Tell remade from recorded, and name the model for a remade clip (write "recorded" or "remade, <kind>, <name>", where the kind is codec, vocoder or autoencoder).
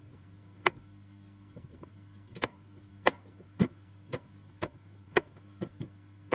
remade, codec, SNAC